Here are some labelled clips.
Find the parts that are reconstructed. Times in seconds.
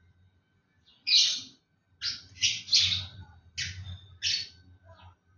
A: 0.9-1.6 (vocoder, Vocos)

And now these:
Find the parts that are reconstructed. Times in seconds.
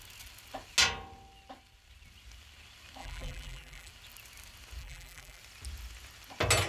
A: 3.0-3.9 (vocoder, BigVGAN v2); 4.8-5.4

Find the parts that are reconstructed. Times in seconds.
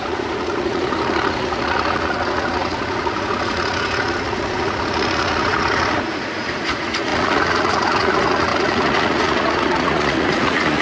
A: 0.0-10.8 (vocoder, Vocos)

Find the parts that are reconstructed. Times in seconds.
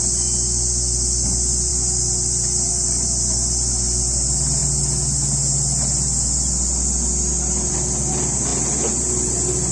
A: none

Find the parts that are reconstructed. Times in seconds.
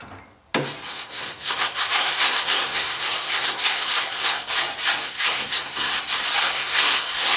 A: 0.9-4.5 (codec, SNAC); 5.0-6.0; 6.4-7.4